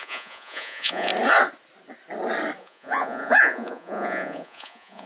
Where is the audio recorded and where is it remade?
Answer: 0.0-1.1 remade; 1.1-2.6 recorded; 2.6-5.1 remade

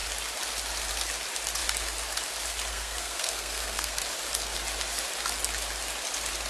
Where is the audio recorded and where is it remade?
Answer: 0.0-2.7 recorded; 2.7-4.0 remade; 4.0-6.5 recorded

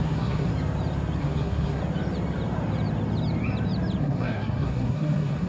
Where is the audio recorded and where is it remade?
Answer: 0.0-0.5 remade; 0.5-1.2 recorded; 1.2-1.8 remade; 1.8-4.0 recorded; 4.0-5.5 remade